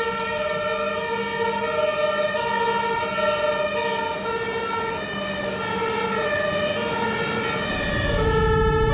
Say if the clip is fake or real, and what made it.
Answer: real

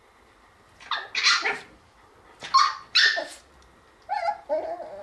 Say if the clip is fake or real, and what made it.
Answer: real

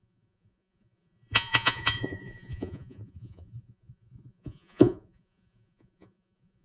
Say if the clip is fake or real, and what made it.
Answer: fake, vocoder, Vocos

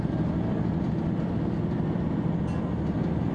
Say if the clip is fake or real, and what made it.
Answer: real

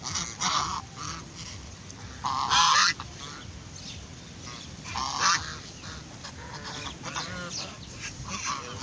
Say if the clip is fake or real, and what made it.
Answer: real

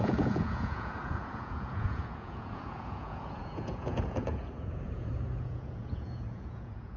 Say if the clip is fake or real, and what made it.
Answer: fake, vocoder, Vocos